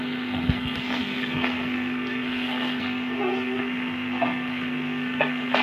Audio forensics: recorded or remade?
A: remade